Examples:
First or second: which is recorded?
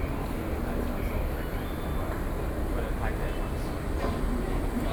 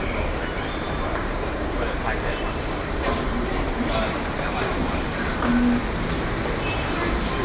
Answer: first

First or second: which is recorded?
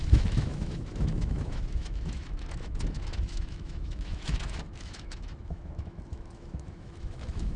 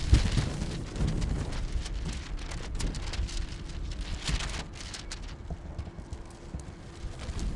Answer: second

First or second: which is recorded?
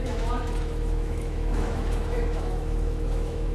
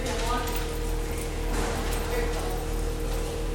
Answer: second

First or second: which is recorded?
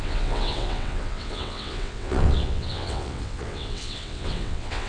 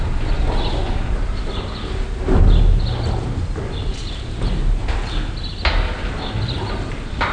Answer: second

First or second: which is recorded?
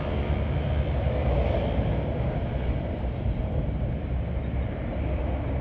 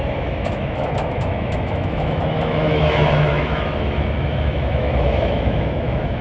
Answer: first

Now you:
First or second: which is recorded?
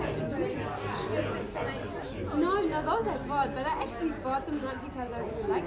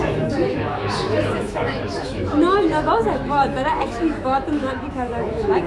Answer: first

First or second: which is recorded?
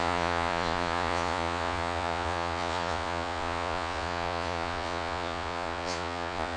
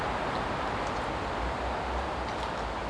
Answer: second